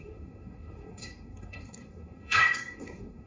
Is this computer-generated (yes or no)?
yes